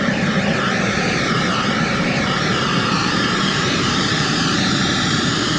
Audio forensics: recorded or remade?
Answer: remade